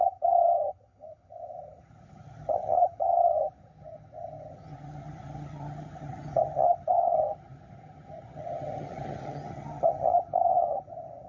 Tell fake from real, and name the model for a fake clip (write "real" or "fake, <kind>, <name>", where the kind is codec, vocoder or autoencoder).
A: fake, vocoder, HiFi-GAN